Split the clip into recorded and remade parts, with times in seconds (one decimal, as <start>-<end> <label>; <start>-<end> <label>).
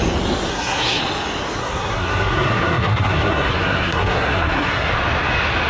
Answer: 0.0-0.5 recorded; 0.5-1.0 remade; 1.0-1.6 recorded; 1.6-4.9 remade; 4.9-5.7 recorded